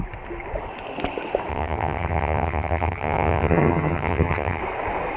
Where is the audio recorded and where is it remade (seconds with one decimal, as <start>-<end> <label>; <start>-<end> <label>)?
0.0-1.5 recorded; 1.5-4.6 remade; 4.6-5.2 recorded